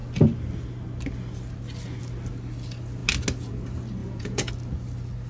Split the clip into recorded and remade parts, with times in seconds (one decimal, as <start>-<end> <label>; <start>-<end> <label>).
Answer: 0.0-4.0 recorded; 4.0-4.5 remade; 4.5-5.3 recorded